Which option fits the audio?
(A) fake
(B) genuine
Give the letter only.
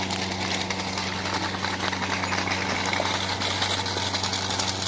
B